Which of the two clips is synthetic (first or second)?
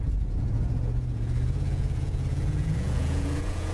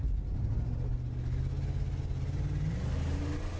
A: first